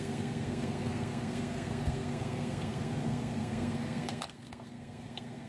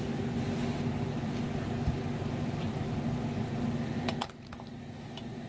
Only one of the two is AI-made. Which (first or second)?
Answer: first